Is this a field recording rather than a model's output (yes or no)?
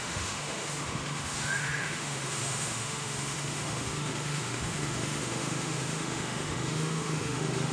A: no